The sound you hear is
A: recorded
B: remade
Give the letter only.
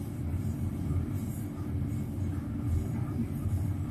B